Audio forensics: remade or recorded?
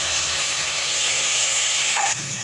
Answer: remade